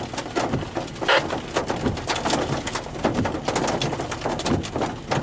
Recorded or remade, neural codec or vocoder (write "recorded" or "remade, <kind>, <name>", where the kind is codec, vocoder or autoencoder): recorded